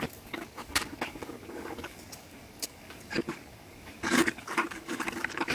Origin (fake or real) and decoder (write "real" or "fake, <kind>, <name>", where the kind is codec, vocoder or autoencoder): fake, codec, DAC